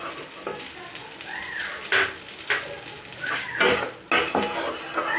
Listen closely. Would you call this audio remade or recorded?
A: recorded